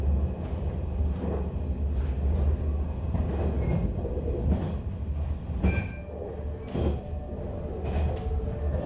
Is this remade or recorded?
recorded